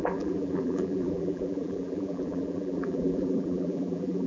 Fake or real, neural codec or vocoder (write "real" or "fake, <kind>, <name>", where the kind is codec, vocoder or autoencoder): fake, vocoder, BigVGAN v2